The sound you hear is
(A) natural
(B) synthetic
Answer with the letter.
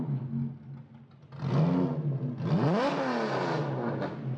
A